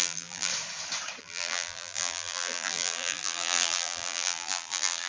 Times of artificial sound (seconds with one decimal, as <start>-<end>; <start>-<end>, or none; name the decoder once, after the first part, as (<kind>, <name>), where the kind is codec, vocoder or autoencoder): 0.0-0.5 (vocoder, BigVGAN v2); 1.2-5.1